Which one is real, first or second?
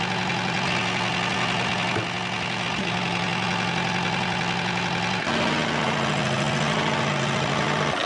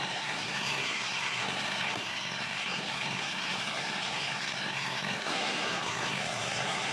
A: first